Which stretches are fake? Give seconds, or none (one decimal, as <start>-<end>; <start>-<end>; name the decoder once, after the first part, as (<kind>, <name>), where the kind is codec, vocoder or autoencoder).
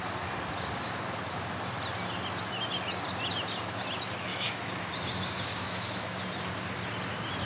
4.3-4.8 (autoencoder, DAC-VAE); 5.5-6.2